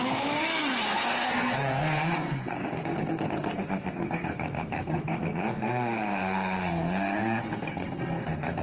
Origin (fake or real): fake